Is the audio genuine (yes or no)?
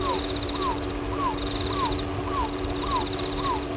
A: yes